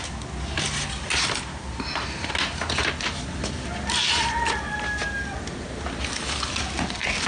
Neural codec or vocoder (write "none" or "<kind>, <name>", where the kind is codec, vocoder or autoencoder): none